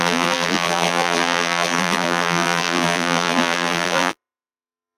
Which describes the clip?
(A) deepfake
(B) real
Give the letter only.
A